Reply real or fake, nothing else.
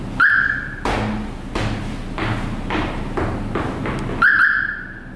real